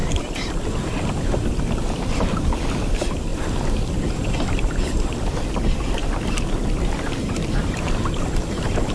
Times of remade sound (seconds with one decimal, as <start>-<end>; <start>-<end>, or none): 0.5-6.0; 8.1-8.9